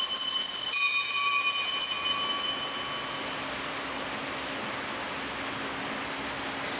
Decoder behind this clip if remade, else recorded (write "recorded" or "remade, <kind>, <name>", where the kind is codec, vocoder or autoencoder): recorded